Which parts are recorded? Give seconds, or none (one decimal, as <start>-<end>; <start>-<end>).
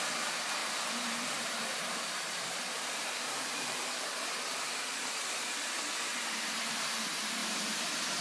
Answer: 0.0-0.6; 3.8-7.4